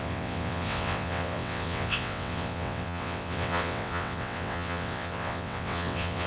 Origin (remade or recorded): remade